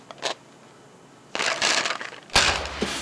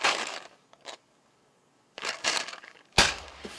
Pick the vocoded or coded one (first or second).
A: second